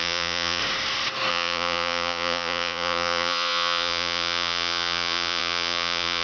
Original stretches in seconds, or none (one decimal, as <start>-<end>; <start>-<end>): 0.6-1.3